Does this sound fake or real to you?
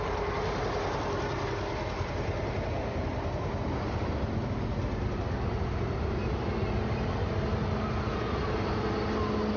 real